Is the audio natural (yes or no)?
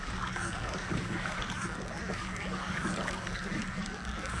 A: no